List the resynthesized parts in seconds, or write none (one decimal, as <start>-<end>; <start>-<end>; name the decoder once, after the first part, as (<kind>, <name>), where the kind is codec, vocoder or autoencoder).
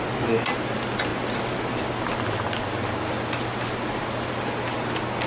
none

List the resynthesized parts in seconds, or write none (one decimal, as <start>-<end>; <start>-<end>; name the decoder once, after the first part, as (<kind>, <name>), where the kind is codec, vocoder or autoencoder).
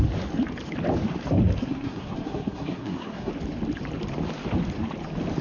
1.6-3.3 (codec, SNAC)